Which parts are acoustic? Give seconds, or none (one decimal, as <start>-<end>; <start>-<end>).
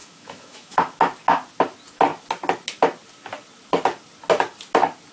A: 0.8-5.1